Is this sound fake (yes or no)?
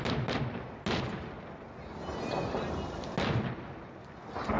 no